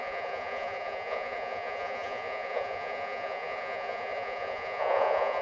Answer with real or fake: fake